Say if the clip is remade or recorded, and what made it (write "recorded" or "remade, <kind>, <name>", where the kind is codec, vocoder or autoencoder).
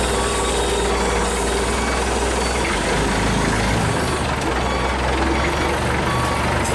recorded